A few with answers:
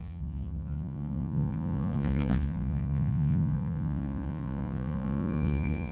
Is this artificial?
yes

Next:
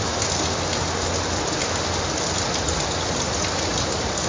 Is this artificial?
no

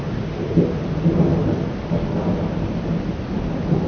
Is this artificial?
no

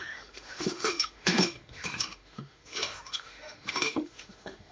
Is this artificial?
yes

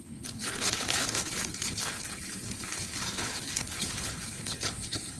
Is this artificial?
yes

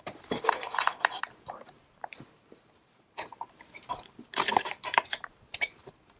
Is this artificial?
yes